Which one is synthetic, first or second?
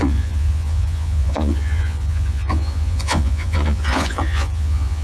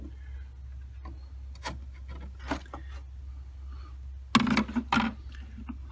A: first